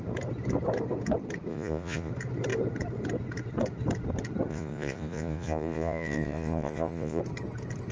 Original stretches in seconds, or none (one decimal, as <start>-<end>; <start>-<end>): 0.0-1.5; 2.1-4.5; 7.2-7.9